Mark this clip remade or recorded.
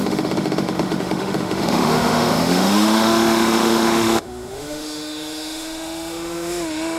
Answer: remade